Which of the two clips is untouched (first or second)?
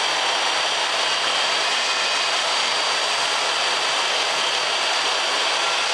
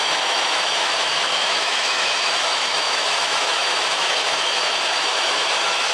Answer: first